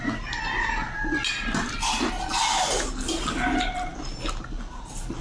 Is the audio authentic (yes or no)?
yes